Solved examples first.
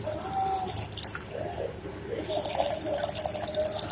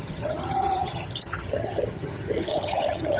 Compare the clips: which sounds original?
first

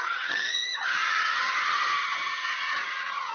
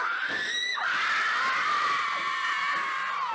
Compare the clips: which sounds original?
second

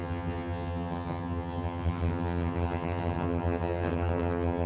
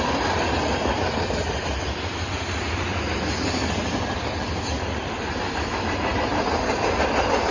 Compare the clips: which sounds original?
second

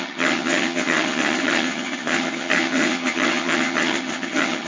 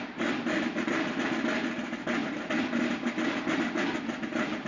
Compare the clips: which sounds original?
second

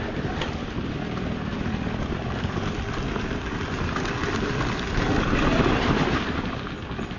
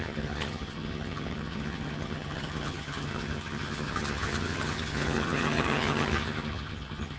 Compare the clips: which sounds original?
first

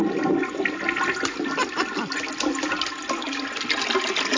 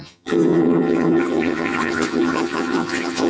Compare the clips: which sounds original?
first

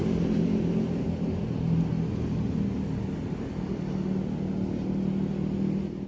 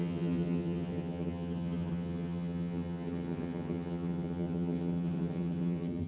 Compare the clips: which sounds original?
first